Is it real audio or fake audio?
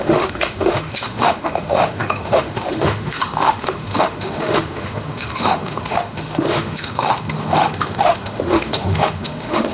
fake